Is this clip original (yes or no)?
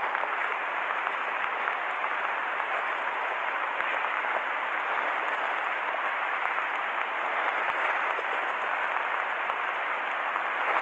yes